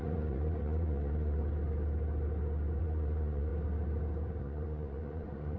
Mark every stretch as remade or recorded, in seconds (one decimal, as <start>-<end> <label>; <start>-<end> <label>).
0.0-1.4 remade; 1.4-2.8 recorded; 2.8-3.5 remade; 3.5-4.4 recorded; 4.4-5.6 remade

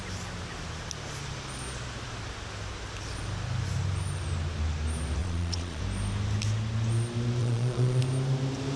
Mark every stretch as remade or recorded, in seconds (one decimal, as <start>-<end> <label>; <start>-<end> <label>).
0.0-5.2 recorded; 5.2-5.8 remade; 5.8-7.4 recorded; 7.4-8.0 remade; 8.0-8.8 recorded

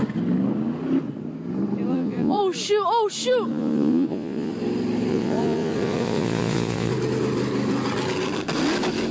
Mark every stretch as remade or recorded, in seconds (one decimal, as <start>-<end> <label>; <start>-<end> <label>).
0.0-1.9 recorded; 1.9-2.4 remade; 2.4-3.5 recorded; 3.5-4.5 remade; 4.5-5.1 recorded; 5.1-6.9 remade; 6.9-9.1 recorded

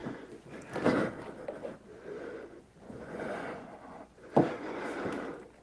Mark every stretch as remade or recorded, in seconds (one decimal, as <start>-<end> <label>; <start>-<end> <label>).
0.0-0.6 remade; 0.6-1.6 recorded; 1.6-5.0 remade; 5.0-5.6 recorded